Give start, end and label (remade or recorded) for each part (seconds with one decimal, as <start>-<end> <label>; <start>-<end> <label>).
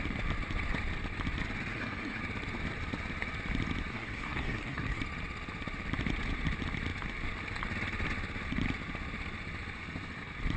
0.0-1.7 recorded; 1.7-2.2 remade; 2.2-3.9 recorded; 3.9-5.0 remade; 5.0-10.6 recorded